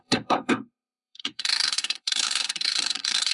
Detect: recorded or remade remade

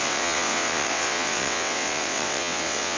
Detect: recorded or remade remade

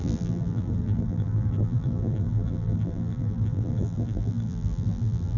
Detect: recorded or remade remade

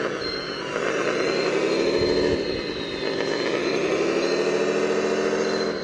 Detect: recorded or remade recorded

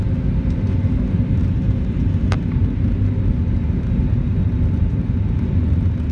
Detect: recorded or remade recorded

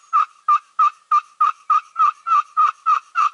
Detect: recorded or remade recorded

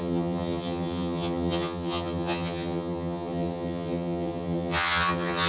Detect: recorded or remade remade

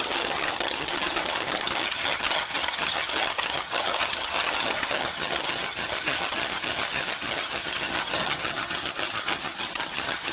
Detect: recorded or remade remade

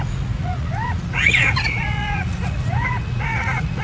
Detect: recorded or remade remade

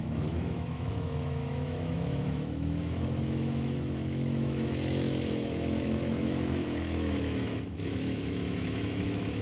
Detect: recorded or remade remade